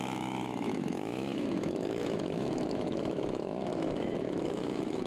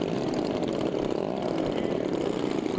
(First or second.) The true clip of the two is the second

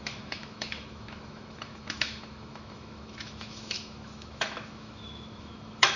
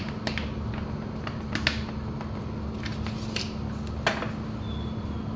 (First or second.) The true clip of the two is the second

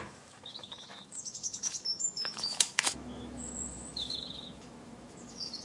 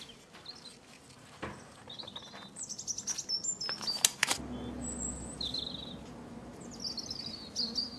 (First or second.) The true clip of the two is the second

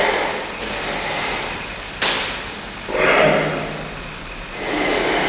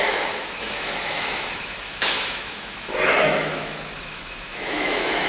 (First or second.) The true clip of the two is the first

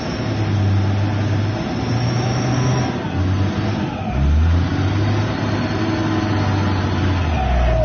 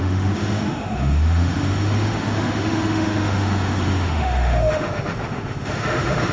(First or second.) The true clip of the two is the first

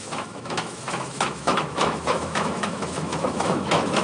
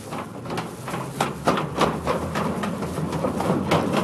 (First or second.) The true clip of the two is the second